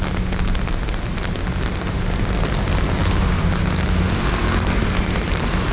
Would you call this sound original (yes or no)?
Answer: yes